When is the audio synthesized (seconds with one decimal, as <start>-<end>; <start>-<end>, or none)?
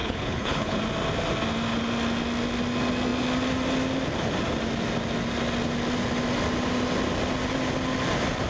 0.0-0.8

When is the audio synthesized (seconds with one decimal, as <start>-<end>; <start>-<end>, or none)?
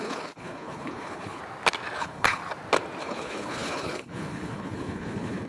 0.0-1.4; 2.0-2.4; 3.0-5.5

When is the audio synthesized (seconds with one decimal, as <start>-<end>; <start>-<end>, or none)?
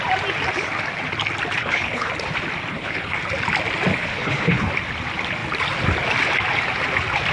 1.6-2.1; 2.7-3.2; 3.9-4.7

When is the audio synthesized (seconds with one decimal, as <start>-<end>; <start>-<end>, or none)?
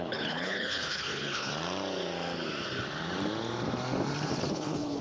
0.0-1.5; 4.5-5.0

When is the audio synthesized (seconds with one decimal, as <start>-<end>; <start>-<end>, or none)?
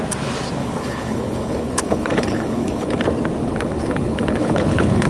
0.6-3.0; 3.4-5.1